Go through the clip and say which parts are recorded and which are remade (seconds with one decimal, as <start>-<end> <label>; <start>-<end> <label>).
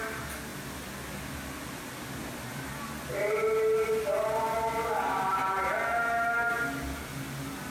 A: 0.0-7.7 recorded